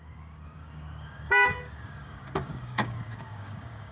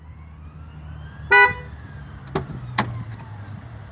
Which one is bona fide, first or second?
second